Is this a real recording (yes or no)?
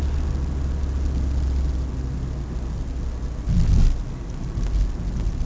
yes